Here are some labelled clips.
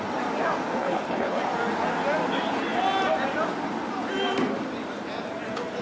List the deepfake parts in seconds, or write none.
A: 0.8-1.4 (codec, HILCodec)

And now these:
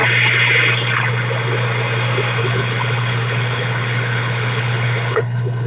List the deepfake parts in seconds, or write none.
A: 2.4-5.7 (codec, HILCodec)

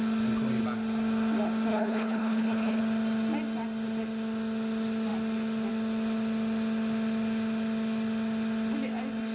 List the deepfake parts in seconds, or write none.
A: 1.7-2.8 (codec, HILCodec)

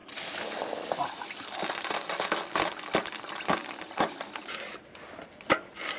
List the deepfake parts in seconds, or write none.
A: none

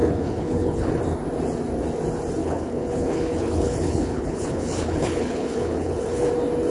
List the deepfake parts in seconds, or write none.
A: 0.0-1.0 (codec, HILCodec); 2.4-6.3